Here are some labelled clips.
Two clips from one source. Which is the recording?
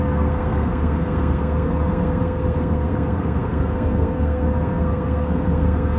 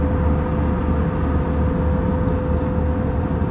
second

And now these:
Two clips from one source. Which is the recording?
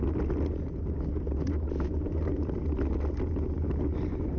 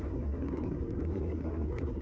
first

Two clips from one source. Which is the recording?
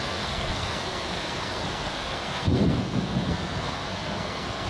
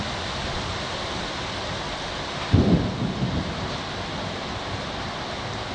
second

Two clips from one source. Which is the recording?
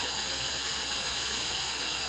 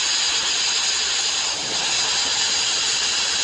second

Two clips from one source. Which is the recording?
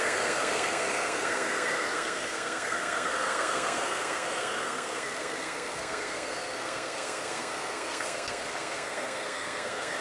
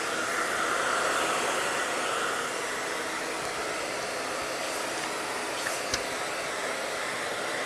second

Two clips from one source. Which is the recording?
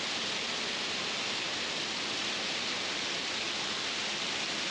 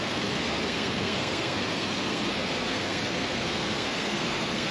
first